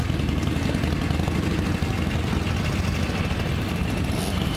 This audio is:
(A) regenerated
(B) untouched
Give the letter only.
B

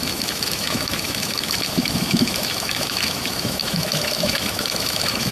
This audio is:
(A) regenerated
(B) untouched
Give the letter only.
A